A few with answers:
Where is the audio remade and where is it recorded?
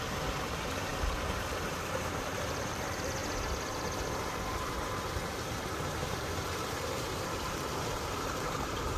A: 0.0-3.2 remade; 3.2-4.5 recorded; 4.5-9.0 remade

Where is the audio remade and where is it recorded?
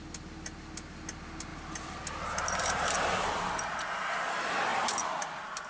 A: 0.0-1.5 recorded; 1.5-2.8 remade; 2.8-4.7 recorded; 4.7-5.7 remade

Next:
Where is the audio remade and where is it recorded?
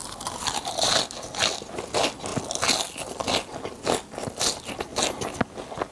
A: 0.0-1.0 remade; 1.0-5.9 recorded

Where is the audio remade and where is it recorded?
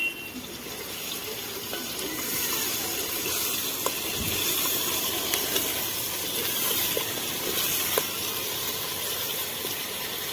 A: 0.0-1.1 recorded; 1.1-10.3 remade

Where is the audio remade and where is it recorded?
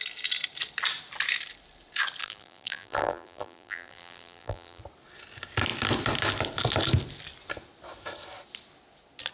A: 0.0-2.2 recorded; 2.2-4.8 remade; 4.8-9.3 recorded